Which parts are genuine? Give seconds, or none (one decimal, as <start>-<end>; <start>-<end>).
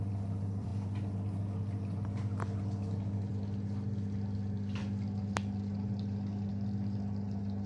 none